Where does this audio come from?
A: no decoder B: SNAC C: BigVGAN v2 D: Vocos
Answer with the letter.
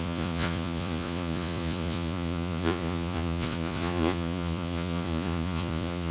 D